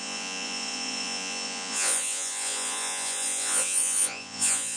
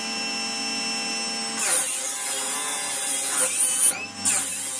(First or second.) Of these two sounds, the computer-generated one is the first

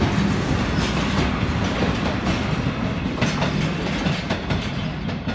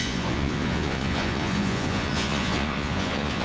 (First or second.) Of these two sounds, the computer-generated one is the second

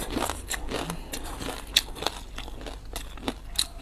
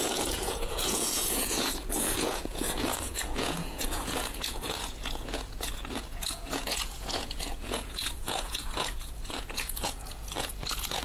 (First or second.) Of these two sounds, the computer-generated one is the second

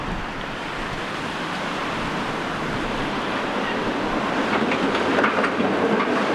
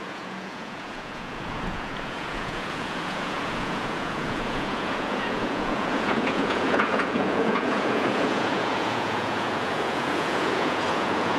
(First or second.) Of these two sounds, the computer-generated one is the second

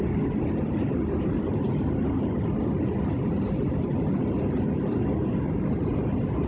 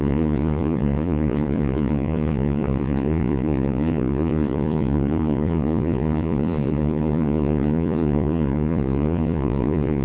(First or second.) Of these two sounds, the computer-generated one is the second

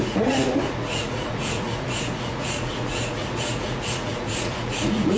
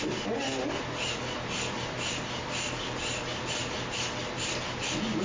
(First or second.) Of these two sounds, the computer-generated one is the first